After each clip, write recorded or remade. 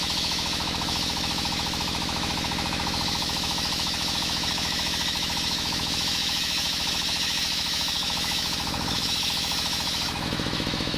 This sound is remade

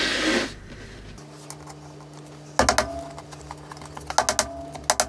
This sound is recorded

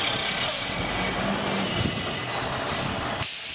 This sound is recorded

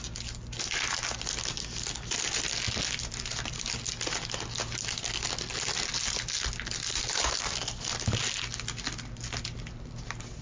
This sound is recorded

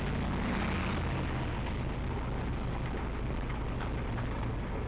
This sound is recorded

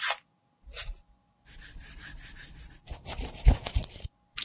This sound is recorded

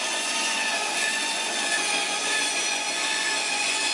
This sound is remade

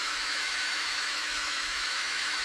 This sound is remade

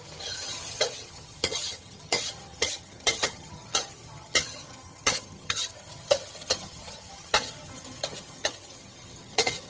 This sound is remade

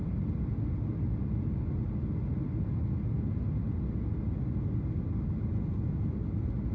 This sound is recorded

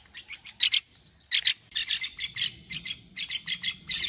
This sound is recorded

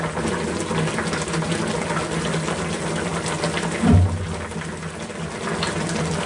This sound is recorded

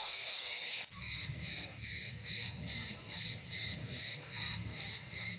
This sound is remade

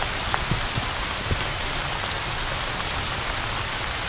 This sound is recorded